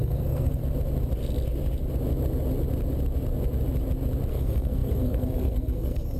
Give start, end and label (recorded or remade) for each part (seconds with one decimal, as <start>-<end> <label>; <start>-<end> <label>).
0.0-0.6 remade; 0.6-4.3 recorded; 4.3-6.2 remade